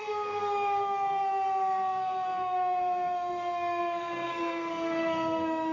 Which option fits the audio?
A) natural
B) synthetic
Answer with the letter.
B